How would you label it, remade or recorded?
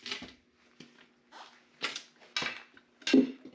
recorded